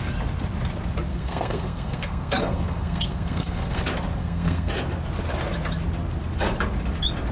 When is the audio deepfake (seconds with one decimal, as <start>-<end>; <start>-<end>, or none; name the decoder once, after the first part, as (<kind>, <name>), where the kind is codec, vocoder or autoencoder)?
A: 1.1-3.8 (codec, SNAC); 4.2-4.7